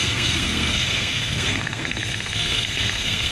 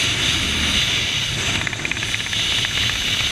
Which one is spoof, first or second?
first